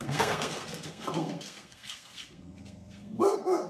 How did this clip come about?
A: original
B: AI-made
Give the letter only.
B